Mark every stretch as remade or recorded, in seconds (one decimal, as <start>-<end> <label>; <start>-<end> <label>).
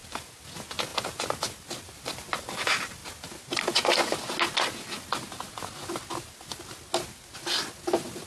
0.0-8.3 recorded